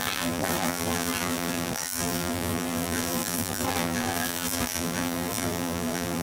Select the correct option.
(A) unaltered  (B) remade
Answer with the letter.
B